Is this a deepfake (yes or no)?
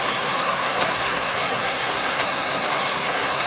yes